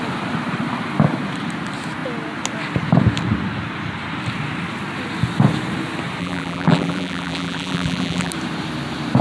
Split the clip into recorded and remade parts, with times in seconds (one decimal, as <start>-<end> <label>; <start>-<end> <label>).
0.0-6.2 recorded; 6.2-8.3 remade; 8.3-9.2 recorded